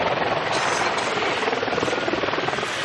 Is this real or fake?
real